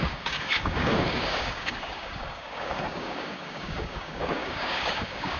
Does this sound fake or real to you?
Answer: fake